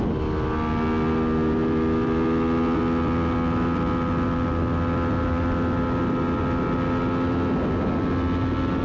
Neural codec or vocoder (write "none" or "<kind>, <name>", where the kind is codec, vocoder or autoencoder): none